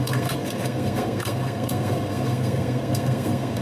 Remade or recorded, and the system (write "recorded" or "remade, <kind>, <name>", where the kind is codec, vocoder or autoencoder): remade, codec, SNAC